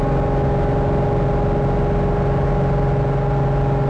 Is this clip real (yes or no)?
yes